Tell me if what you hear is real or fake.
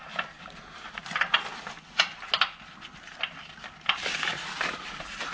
real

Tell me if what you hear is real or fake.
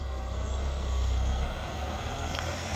fake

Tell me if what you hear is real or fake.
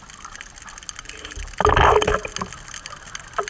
real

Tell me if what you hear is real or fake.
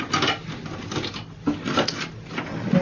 real